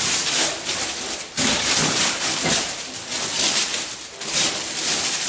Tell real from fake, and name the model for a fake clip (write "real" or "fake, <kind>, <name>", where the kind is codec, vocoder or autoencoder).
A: fake, vocoder, BigVGAN v2